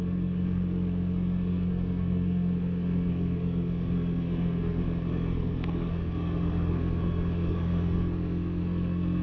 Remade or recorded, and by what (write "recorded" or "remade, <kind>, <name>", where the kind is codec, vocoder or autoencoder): remade, codec, SNAC